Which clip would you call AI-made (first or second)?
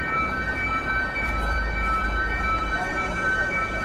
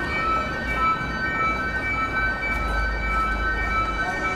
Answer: first